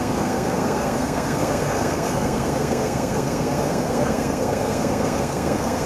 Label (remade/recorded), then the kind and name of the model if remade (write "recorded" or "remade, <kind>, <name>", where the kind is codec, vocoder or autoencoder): remade, codec, SNAC